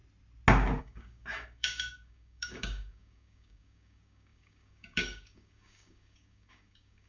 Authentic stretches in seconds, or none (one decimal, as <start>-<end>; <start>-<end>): 0.0-0.8